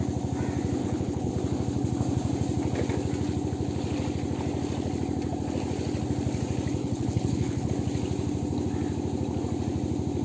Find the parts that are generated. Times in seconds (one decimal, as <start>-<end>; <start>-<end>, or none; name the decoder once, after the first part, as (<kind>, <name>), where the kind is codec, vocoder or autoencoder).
0.8-1.3 (codec, HILCodec); 6.8-7.7